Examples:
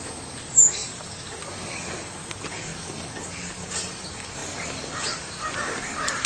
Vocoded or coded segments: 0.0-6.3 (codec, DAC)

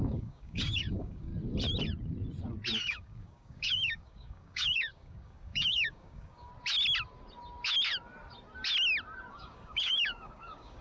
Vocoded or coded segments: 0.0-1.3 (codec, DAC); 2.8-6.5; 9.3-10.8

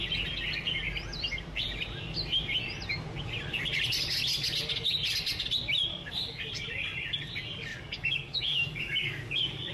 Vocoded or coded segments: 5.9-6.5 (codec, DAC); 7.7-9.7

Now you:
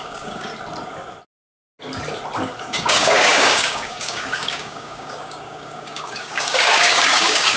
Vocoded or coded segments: 0.0-0.5 (codec, DAC); 2.6-7.6

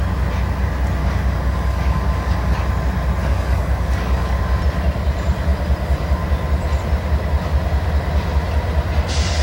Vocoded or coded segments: 1.0-2.7 (codec, DAC); 3.2-4.4

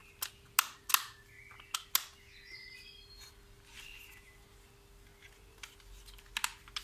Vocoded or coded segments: none

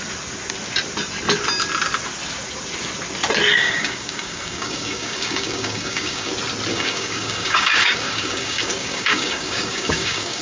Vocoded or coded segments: 3.6-6.3 (codec, DAC); 6.7-10.4

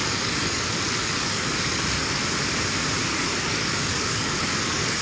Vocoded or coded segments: 0.0-2.2 (codec, DAC); 3.1-5.0